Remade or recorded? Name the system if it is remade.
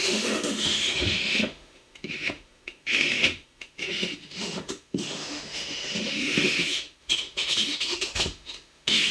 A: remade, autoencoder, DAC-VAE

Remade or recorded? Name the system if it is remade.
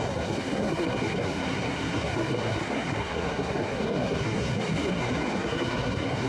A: remade, codec, SNAC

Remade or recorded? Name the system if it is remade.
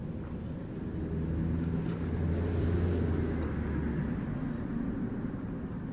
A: recorded